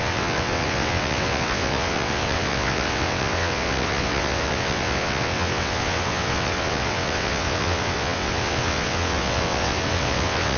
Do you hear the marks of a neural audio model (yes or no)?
yes